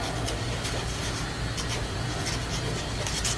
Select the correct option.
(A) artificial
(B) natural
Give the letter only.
B